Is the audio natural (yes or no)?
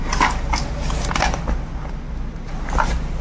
yes